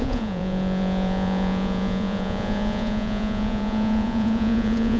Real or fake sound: fake